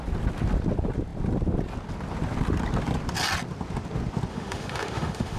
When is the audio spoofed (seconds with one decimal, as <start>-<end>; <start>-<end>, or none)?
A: 4.3-5.4